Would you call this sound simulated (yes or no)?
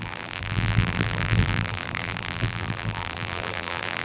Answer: yes